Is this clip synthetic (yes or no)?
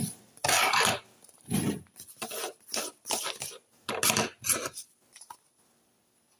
no